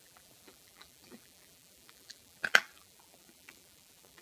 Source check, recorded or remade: remade